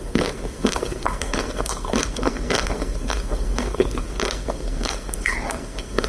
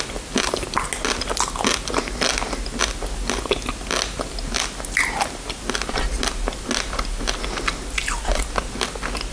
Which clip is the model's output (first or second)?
first